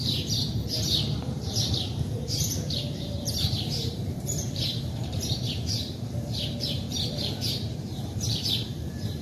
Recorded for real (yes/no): no